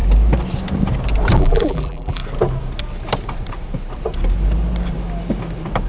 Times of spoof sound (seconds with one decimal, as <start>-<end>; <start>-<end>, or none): 1.4-2.2